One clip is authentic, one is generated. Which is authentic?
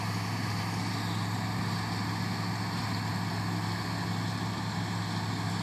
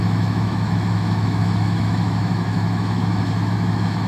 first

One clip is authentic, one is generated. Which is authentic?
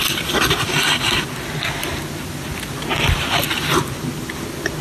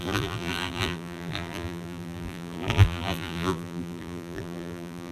first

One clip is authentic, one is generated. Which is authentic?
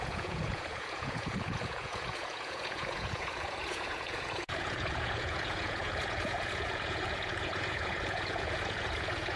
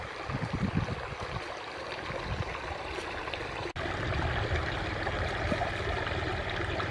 second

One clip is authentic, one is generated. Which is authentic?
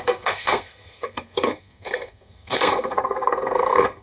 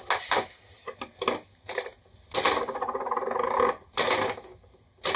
second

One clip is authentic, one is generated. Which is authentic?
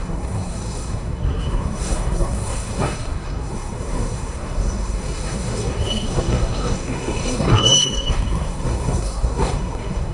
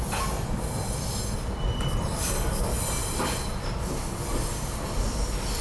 second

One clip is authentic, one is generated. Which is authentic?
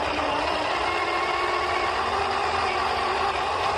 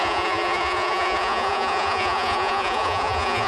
first